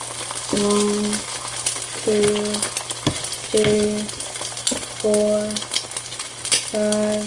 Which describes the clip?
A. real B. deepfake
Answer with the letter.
A